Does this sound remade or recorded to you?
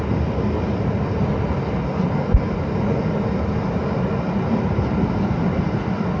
recorded